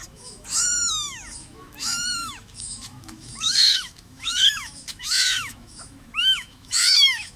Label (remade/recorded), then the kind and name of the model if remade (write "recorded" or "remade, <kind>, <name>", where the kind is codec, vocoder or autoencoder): remade, autoencoder, DAC-VAE